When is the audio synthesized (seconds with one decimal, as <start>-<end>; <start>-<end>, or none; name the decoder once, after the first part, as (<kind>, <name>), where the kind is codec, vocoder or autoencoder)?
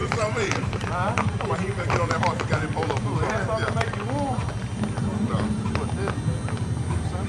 0.0-3.3 (vocoder, BigVGAN v2); 5.1-5.7